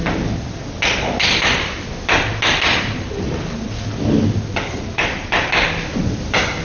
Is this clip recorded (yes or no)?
yes